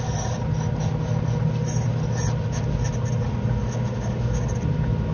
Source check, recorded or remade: recorded